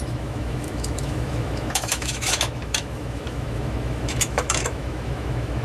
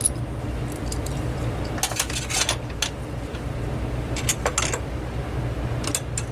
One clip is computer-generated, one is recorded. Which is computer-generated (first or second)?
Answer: first